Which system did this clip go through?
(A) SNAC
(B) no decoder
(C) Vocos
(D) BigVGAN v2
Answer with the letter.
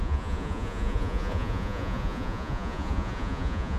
C